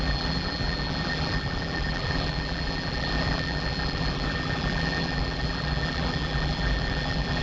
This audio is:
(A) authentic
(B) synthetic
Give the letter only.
B